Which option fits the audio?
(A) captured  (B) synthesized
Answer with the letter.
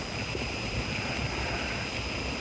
B